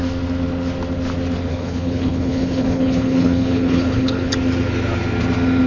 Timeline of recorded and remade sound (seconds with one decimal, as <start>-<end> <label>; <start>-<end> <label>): 0.0-1.5 recorded; 1.5-4.3 remade; 4.3-5.7 recorded